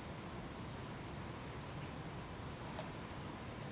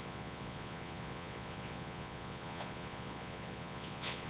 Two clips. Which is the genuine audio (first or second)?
first